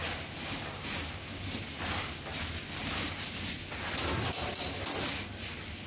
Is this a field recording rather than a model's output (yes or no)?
yes